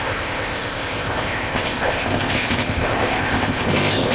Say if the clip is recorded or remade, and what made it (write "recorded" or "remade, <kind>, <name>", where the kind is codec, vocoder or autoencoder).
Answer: remade, codec, ZipCodec